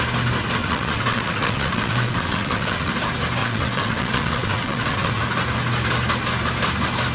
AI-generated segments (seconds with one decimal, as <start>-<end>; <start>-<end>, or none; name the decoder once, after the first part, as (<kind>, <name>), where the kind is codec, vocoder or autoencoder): 0.6-2.9 (vocoder, WaveNeXt); 3.4-5.2